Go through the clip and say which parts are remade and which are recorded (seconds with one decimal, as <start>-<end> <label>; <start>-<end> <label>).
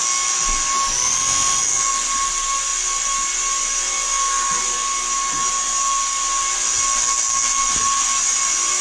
0.0-8.8 recorded